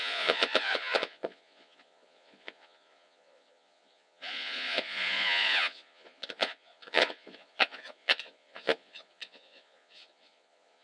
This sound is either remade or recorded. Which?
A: remade